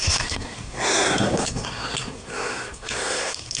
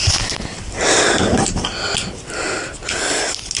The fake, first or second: first